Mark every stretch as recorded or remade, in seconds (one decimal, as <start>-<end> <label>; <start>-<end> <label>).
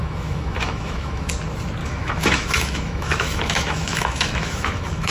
0.0-1.3 remade; 1.3-1.8 recorded; 1.8-5.1 remade